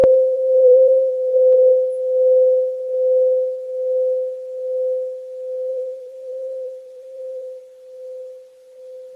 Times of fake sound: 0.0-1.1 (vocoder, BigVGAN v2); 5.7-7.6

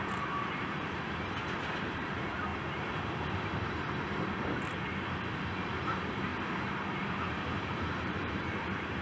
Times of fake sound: 0.0-2.5 (vocoder, BigVGAN v2); 5.7-9.0